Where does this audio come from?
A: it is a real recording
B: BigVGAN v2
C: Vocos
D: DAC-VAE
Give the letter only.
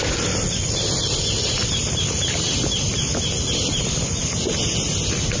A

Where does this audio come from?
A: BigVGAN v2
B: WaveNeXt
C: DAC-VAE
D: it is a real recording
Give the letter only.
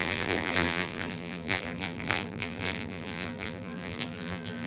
A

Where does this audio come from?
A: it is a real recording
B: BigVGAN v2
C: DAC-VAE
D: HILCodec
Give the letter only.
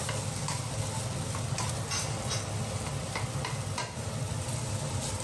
A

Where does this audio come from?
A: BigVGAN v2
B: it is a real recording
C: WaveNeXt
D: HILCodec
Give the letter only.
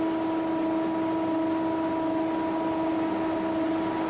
B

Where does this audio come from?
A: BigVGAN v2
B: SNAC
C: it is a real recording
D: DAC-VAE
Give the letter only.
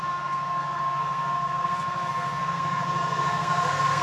B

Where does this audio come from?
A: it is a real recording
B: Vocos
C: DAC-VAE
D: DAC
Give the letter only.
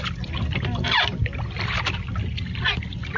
A